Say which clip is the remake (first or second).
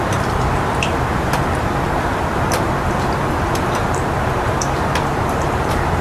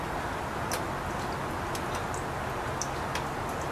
first